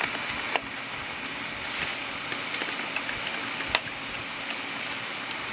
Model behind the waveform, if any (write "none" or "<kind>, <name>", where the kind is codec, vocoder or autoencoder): none